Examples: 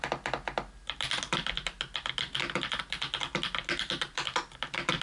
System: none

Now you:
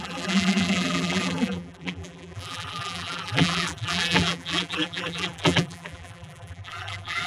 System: vocoder, BigVGAN v2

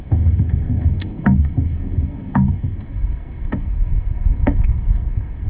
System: codec, SNAC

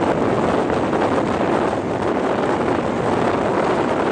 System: none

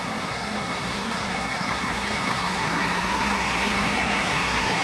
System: codec, SNAC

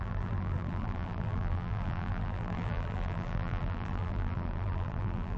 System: vocoder, BigVGAN v2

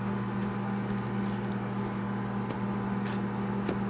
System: none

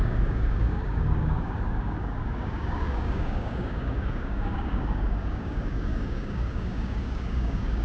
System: codec, DAC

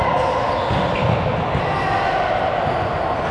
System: none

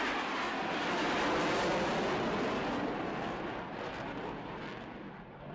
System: none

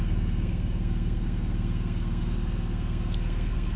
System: codec, SNAC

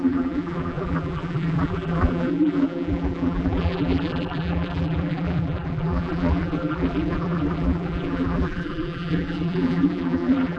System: vocoder, BigVGAN v2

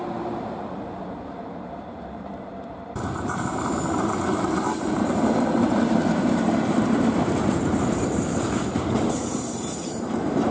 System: vocoder, BigVGAN v2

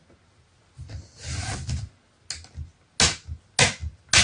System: none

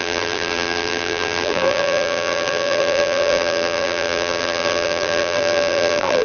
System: vocoder, BigVGAN v2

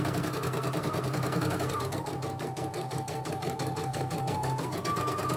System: codec, SNAC